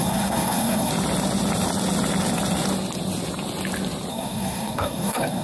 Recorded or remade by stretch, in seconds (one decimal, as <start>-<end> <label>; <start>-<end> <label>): 0.0-0.9 remade; 0.9-4.1 recorded; 4.1-5.4 remade